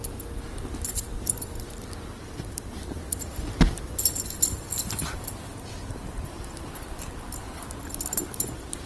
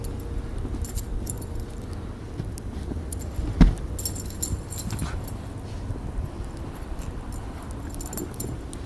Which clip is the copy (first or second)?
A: first